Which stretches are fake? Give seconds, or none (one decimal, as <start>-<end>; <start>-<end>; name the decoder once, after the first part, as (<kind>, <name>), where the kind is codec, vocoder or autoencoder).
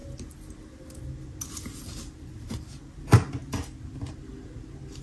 none